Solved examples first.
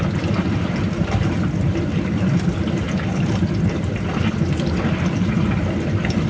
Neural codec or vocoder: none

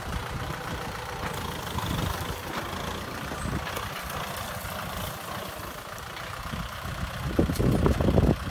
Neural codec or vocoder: none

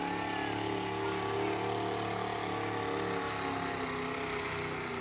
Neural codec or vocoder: none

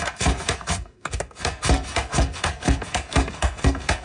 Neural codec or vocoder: codec, SNAC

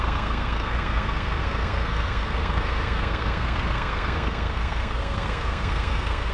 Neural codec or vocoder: codec, SNAC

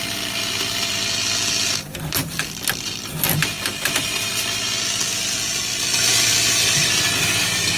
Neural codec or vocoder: none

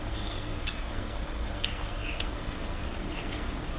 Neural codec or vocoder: codec, SNAC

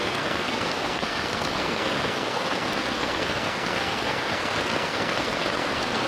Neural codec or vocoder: codec, SNAC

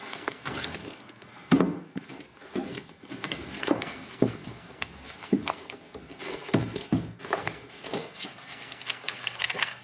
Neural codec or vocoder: codec, SNAC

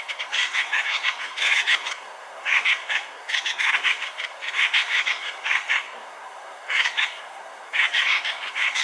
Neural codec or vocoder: codec, SNAC